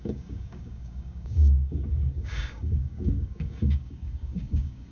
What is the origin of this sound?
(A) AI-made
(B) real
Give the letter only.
A